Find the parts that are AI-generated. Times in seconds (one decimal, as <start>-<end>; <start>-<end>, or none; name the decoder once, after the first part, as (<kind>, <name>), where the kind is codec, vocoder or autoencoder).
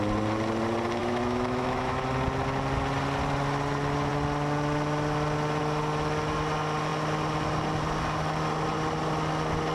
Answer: 1.0-2.0 (autoencoder, DAC-VAE)